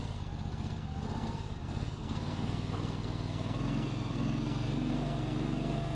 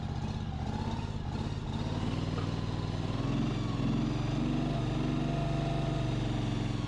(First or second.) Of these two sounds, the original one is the second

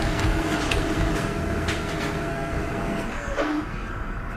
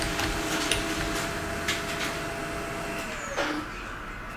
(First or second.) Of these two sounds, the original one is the second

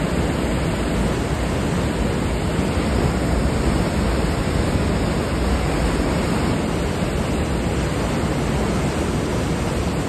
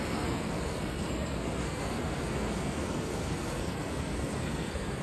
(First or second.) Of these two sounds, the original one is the first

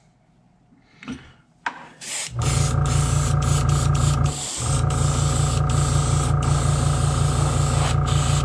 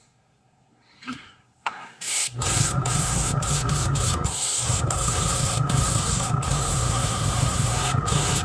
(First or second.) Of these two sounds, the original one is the first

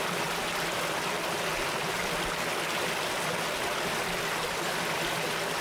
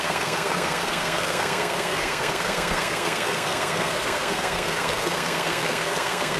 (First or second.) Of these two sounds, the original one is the first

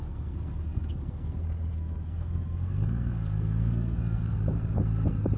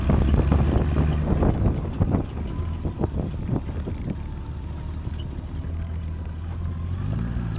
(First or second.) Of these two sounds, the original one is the second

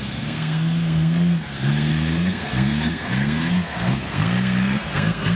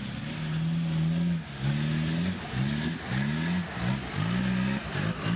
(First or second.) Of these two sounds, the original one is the second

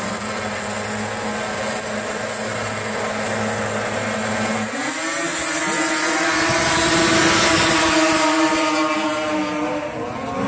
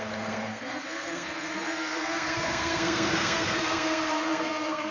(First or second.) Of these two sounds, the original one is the first